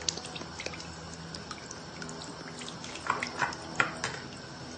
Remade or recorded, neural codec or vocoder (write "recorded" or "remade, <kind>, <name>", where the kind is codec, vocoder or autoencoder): recorded